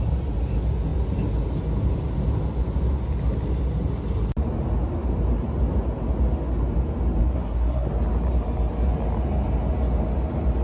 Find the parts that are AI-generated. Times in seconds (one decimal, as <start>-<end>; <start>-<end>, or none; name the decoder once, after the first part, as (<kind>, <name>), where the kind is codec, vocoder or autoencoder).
7.2-7.9 (codec, SNAC)